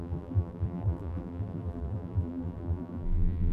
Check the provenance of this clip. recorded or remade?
remade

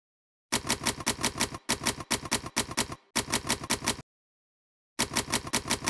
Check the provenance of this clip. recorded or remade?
recorded